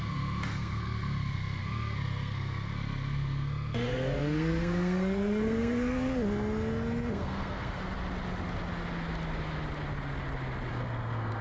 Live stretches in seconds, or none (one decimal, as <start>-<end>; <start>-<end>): 6.1-7.1; 7.8-10.7